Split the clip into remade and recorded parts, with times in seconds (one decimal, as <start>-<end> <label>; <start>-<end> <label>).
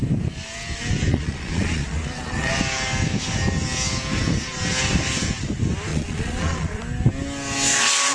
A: 0.0-1.1 recorded; 1.1-2.6 remade; 2.6-5.9 recorded; 5.9-6.8 remade; 6.8-8.1 recorded